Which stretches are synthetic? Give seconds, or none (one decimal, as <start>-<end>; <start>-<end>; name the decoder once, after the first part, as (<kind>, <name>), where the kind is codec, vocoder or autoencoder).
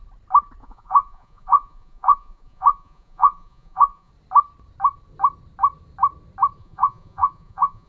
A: 0.6-4.1 (vocoder, Vocos); 6.6-7.9